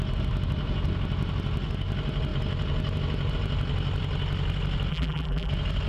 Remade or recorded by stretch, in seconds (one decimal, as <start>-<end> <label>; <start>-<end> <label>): 0.0-4.9 recorded; 4.9-5.5 remade; 5.5-5.9 recorded